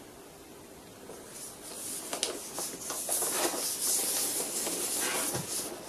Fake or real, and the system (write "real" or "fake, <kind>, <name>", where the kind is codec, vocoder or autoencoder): real